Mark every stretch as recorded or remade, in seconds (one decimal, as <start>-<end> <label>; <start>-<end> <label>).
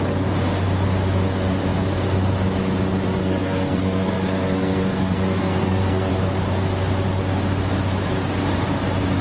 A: 0.0-3.2 recorded; 3.2-6.1 remade; 6.1-9.2 recorded